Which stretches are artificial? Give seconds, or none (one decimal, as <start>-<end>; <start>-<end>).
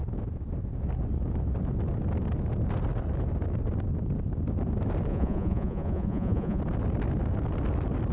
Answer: 5.1-6.6